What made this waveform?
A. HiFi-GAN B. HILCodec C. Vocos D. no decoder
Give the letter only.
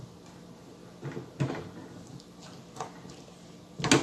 D